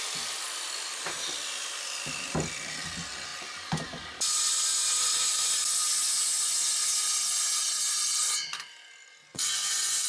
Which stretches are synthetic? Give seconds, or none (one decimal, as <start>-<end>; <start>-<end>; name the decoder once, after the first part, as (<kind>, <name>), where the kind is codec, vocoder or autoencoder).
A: 9.3-10.1 (vocoder, Vocos)